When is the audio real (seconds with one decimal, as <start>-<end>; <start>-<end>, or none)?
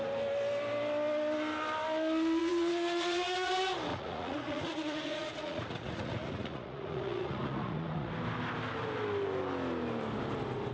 0.0-2.4; 3.5-3.9; 8.1-10.7